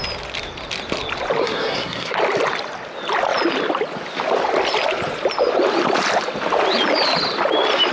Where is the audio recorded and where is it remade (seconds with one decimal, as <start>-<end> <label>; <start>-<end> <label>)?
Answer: 0.0-1.4 recorded; 1.4-2.1 remade; 2.1-7.9 recorded